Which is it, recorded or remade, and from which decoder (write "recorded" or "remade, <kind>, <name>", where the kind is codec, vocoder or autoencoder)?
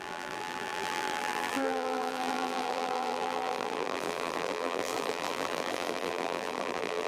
remade, vocoder, BigVGAN v2